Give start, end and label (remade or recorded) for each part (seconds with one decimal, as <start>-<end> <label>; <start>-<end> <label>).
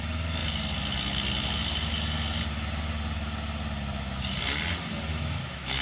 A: 0.0-5.1 recorded; 5.1-5.8 remade